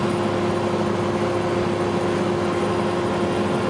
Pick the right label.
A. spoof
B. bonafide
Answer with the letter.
B